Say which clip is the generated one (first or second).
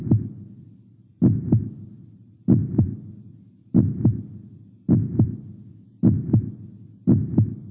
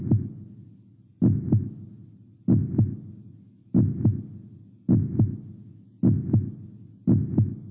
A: first